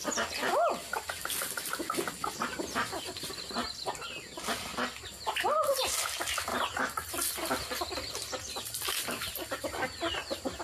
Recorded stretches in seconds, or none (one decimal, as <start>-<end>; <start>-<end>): 0.0-4.7; 5.8-6.5